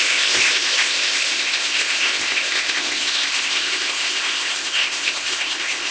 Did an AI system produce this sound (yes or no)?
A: yes